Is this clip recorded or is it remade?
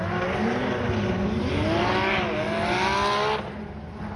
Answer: recorded